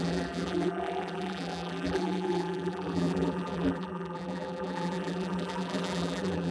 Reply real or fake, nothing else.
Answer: fake